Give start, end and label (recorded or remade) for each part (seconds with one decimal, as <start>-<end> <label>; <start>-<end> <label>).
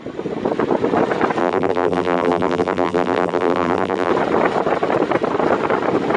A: 0.0-1.4 recorded; 1.4-4.1 remade; 4.1-6.2 recorded